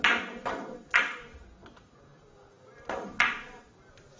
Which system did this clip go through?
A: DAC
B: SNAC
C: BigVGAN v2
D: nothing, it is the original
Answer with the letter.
D